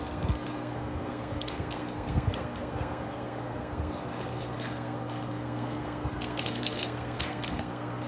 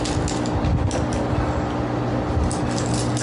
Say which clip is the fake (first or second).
first